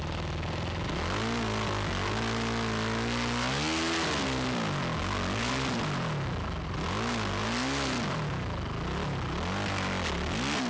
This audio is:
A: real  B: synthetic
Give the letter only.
A